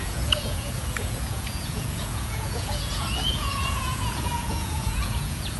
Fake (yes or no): yes